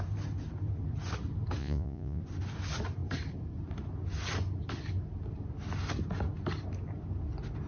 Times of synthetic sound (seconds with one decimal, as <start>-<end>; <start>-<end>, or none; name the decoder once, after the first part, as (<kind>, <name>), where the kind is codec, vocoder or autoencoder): 1.6-2.2 (vocoder, Vocos)